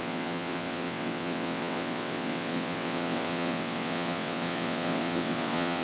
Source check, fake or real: fake